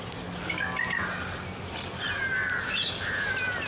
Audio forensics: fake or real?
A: real